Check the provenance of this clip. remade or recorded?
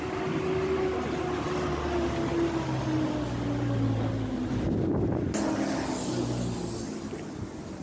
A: recorded